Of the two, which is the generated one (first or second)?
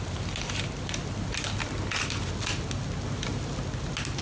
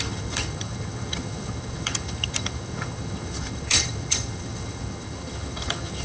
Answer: second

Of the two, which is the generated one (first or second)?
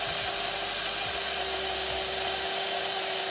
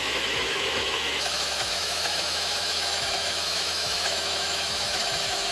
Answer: second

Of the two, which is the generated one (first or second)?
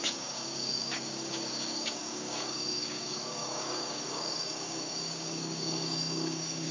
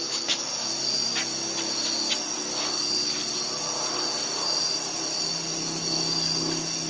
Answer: first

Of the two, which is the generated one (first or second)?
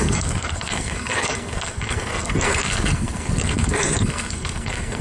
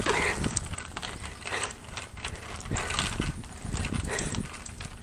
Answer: first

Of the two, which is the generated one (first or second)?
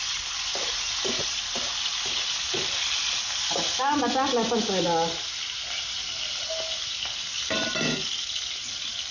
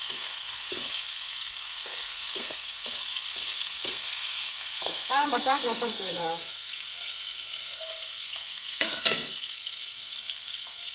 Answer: second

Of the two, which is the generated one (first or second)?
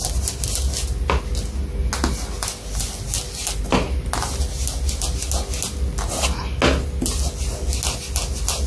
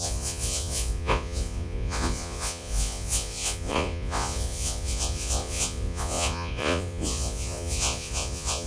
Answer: second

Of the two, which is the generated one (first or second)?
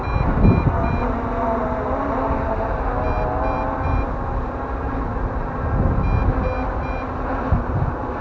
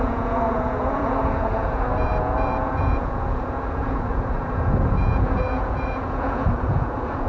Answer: second